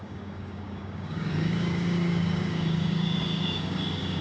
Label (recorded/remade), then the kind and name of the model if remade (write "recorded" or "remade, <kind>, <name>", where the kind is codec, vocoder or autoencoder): remade, codec, DAC